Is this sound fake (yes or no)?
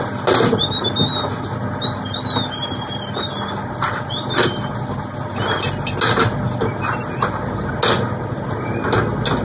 no